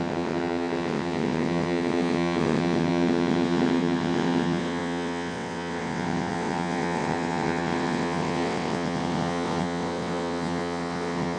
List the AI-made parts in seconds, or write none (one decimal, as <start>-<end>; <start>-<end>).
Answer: 0.0-11.4